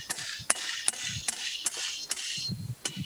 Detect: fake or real fake